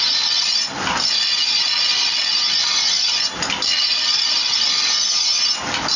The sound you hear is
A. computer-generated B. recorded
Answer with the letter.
B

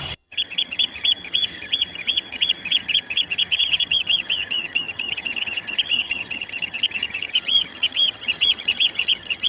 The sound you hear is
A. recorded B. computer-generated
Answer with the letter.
B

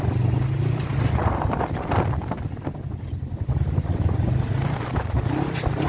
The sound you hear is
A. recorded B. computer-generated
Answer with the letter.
A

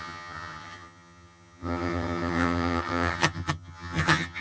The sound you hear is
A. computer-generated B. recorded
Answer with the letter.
A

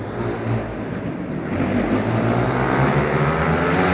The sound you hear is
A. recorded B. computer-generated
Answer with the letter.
A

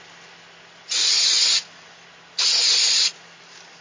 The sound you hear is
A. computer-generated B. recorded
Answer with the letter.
B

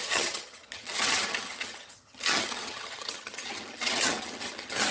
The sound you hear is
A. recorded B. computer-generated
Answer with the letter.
B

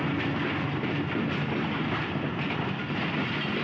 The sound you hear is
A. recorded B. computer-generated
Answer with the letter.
A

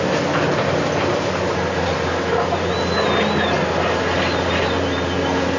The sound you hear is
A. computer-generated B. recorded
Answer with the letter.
B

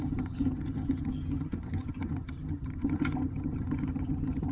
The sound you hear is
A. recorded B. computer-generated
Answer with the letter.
B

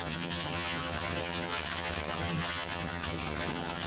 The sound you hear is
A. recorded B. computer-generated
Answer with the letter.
B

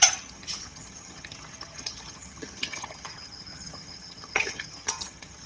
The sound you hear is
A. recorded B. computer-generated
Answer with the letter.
B